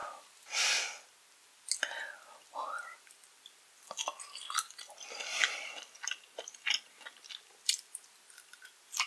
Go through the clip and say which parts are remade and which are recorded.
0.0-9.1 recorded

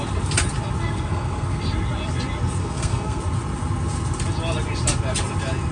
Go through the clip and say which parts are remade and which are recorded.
0.0-0.8 recorded; 0.8-1.6 remade; 1.6-2.6 recorded; 2.6-3.2 remade; 3.2-5.7 recorded

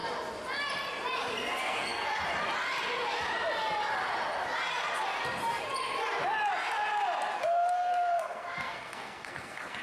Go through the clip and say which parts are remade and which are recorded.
0.0-1.6 recorded; 1.6-2.1 remade; 2.1-7.3 recorded; 7.3-9.8 remade